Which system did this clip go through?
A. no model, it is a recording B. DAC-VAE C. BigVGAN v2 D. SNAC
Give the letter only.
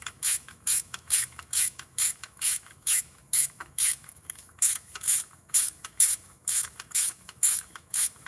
B